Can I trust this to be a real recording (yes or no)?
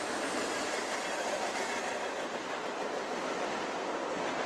yes